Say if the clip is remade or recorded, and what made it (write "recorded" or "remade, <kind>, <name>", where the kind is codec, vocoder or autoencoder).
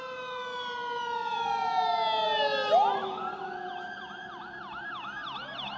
recorded